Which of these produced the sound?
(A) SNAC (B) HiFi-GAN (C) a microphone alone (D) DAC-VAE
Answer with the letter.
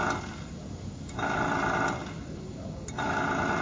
C